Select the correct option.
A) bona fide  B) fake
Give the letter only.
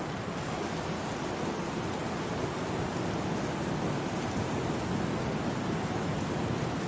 A